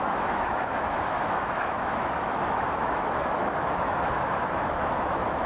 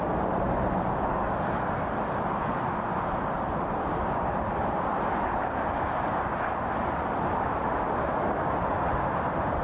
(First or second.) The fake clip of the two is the first